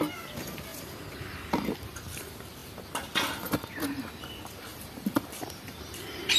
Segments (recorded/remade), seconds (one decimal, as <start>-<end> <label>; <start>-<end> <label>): 0.0-4.7 recorded; 4.7-6.4 remade